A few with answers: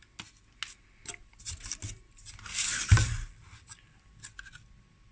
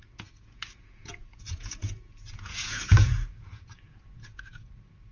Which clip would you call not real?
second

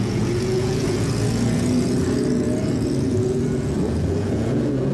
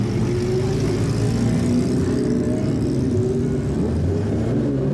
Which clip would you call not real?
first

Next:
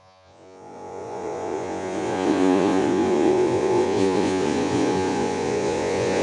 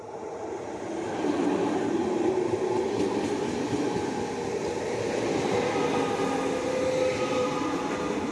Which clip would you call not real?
first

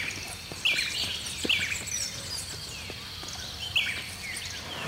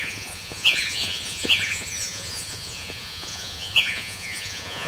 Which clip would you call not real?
second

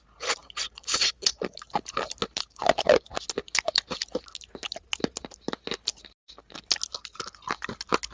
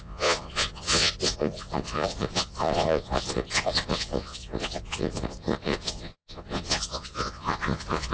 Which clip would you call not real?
second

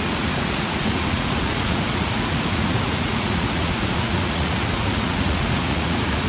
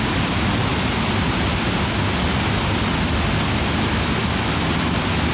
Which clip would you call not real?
first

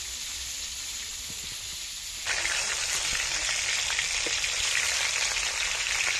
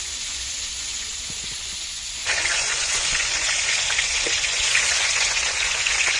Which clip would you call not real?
second